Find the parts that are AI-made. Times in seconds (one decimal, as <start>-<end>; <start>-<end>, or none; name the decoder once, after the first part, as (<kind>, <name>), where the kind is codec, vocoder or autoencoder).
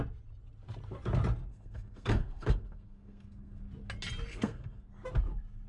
1.5-3.6 (codec, SNAC); 4.3-4.9